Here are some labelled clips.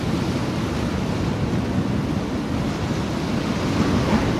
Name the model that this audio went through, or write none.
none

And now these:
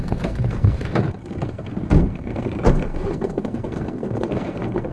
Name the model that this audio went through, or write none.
codec, SNAC